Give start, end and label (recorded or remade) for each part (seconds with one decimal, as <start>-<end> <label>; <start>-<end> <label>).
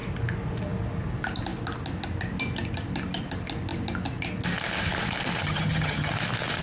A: 0.0-5.4 recorded; 5.4-6.1 remade; 6.1-6.6 recorded